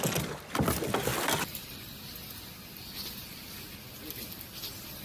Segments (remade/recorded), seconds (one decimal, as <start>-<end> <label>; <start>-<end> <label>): 0.0-5.0 recorded